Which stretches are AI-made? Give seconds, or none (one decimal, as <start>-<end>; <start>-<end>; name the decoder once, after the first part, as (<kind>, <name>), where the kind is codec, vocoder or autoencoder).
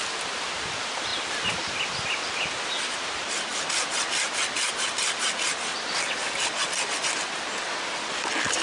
none